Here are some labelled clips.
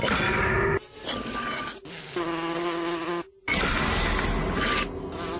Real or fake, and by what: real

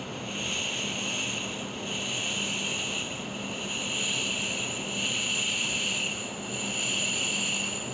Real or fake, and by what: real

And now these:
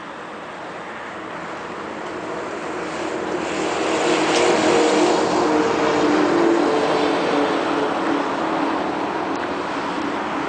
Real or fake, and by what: real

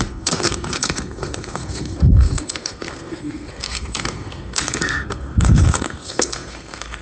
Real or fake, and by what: fake, codec, SNAC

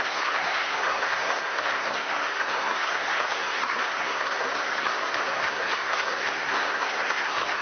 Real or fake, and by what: fake, codec, SNAC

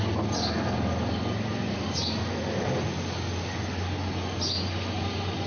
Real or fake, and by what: real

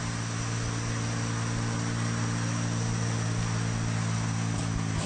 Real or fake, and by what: real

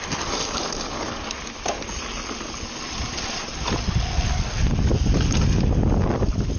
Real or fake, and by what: real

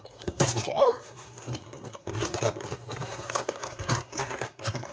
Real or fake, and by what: fake, codec, SNAC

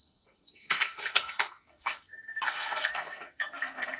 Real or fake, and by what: fake, codec, SNAC